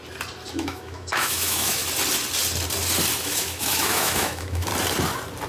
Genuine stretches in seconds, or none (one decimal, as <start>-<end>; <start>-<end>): 0.0-0.5; 1.8-3.2; 4.7-5.5